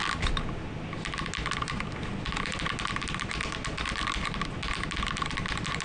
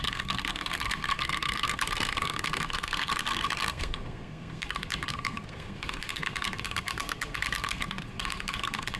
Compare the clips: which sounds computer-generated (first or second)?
second